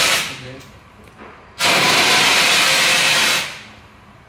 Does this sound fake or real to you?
fake